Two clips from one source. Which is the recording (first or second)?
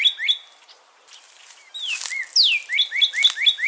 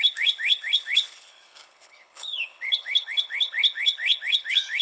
first